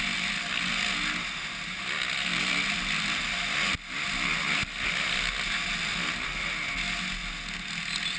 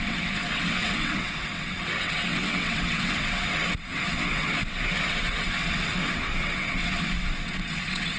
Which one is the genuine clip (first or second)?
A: first